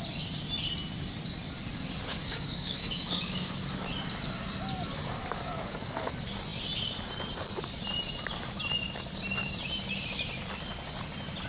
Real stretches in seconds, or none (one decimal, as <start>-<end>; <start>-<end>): 0.0-2.2; 3.6-5.2; 6.1-11.5